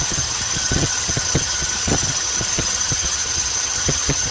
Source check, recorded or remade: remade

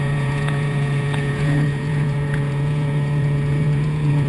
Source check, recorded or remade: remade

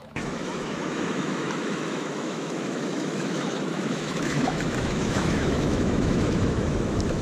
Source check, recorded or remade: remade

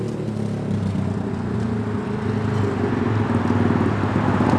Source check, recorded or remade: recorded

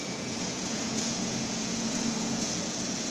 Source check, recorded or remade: remade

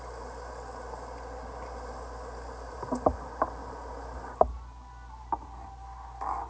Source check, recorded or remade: recorded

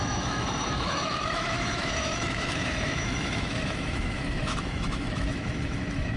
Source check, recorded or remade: remade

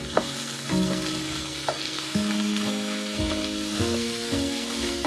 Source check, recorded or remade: remade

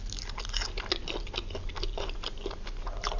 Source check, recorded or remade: recorded